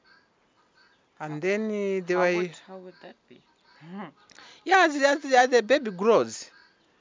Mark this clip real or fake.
real